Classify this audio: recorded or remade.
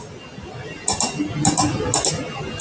recorded